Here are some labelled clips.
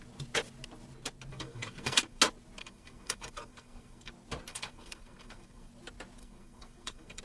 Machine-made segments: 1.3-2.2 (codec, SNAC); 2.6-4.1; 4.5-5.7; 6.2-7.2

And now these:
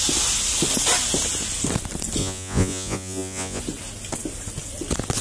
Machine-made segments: 2.2-3.6 (vocoder, Vocos)

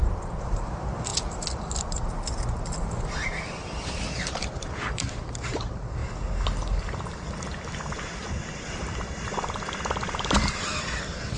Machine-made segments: 1.1-1.6 (vocoder, BigVGAN v2); 3.6-4.8